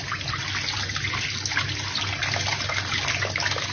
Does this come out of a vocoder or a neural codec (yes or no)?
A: no